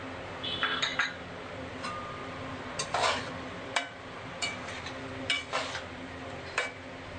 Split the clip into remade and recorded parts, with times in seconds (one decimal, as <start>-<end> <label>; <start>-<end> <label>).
0.0-0.9 recorded; 0.9-5.2 remade; 5.2-7.2 recorded